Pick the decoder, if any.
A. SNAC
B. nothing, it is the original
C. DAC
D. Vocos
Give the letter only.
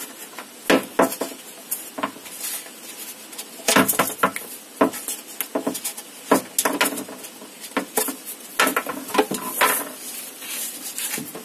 B